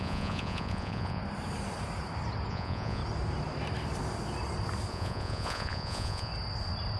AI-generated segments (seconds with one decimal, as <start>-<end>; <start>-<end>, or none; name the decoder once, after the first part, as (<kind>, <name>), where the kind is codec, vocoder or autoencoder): 0.0-1.2 (vocoder, Vocos); 2.5-3.0; 4.9-6.3